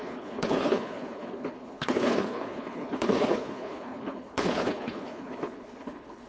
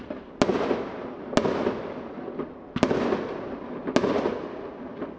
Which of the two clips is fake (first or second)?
first